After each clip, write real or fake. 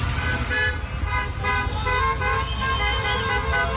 real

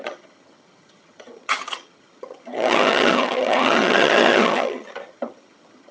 fake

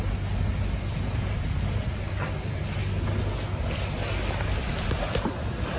real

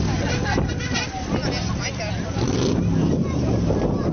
real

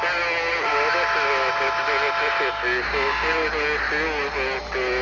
real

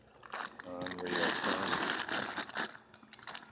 real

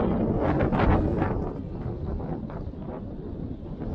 real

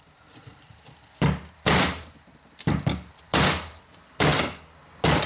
real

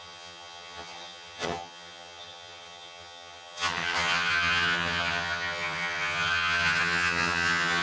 fake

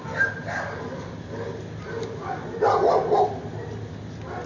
real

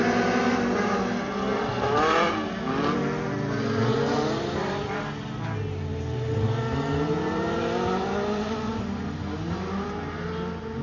real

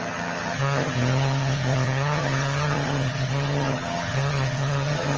fake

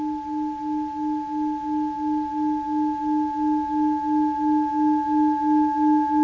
real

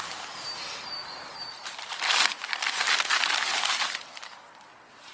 real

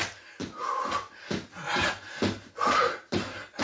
real